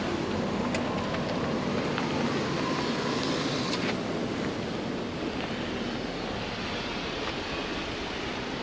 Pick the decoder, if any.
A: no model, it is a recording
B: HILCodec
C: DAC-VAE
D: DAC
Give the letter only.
A